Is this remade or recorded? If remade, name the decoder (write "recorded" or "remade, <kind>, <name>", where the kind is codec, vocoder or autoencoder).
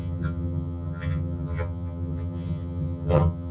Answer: remade, vocoder, HiFi-GAN